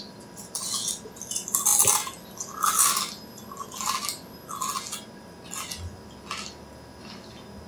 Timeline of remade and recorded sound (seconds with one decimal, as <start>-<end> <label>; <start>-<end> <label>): 0.0-7.7 recorded